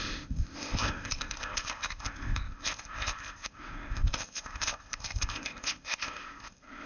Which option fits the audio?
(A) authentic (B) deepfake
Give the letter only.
B